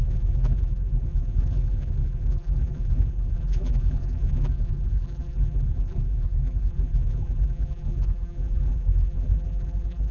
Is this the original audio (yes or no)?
no